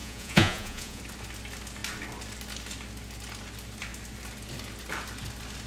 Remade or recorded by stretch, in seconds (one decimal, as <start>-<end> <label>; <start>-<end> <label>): 0.0-1.0 remade; 1.0-5.7 recorded